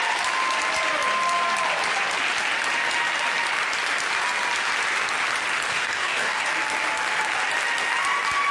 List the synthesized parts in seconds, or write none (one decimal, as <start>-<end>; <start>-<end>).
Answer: 5.7-6.5